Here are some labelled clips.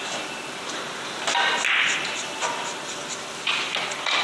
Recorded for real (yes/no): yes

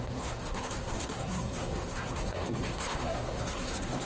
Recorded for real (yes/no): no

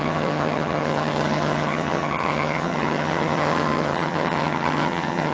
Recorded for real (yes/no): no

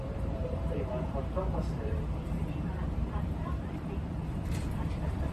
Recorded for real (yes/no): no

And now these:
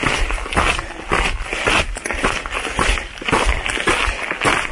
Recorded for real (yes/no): yes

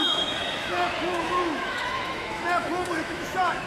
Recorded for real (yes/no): no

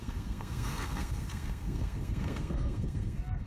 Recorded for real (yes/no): no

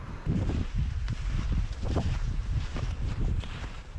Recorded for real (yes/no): no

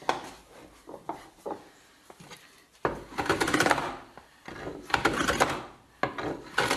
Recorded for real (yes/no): yes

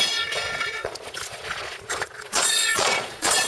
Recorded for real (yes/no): no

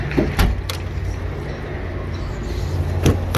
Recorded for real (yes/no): yes